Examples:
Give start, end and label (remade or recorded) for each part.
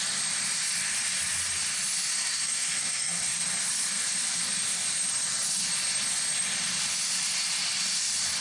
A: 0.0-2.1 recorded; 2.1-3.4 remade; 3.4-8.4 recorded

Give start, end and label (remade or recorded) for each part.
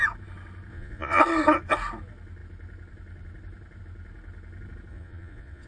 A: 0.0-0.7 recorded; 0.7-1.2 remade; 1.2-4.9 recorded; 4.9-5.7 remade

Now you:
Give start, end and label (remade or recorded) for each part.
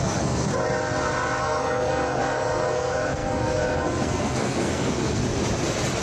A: 0.0-0.5 remade; 0.5-1.4 recorded; 1.4-5.2 remade; 5.2-6.0 recorded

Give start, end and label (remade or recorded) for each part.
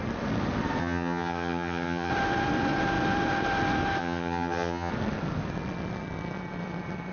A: 0.0-0.8 recorded; 0.8-2.1 remade; 2.1-4.0 recorded; 4.0-4.9 remade; 4.9-7.1 recorded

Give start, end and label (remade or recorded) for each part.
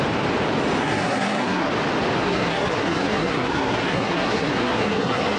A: 0.0-0.8 recorded; 0.8-1.7 remade; 1.7-2.2 recorded; 2.2-5.4 remade